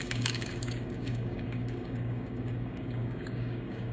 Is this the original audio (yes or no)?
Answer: no